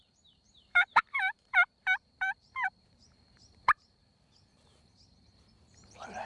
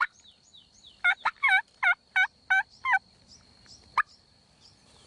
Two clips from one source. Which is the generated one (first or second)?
first